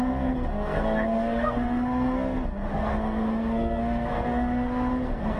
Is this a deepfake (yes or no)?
yes